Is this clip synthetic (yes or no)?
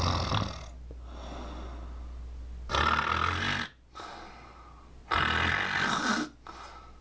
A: no